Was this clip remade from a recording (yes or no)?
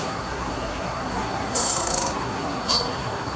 yes